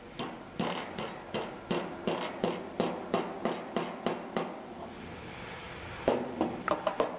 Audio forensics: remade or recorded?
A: recorded